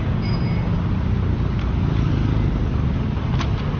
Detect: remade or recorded recorded